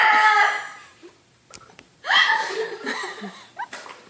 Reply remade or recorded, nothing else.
remade